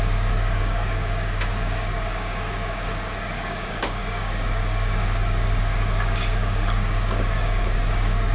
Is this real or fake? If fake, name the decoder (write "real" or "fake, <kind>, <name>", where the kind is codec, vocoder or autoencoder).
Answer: fake, codec, DAC